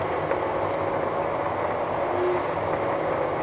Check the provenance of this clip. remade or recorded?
recorded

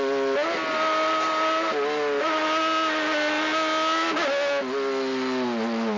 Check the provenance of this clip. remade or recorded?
recorded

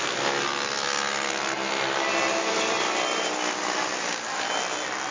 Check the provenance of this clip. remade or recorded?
recorded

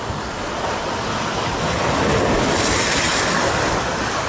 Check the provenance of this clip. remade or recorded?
recorded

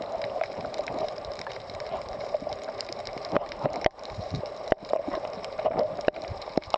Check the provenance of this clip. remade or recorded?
remade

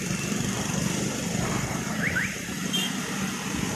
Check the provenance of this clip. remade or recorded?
remade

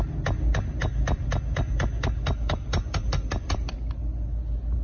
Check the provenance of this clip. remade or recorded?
recorded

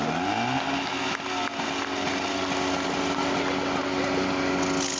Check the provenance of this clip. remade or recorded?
recorded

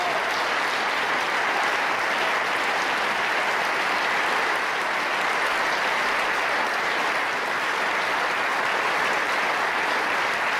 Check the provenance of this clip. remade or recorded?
recorded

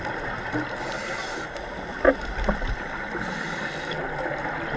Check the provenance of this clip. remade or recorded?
recorded